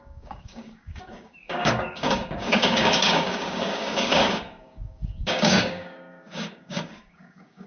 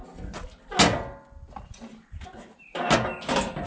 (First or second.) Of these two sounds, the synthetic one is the first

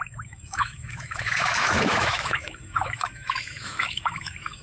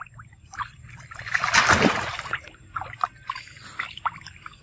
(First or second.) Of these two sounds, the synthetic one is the first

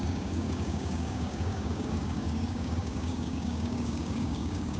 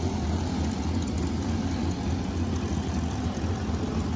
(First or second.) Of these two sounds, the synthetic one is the first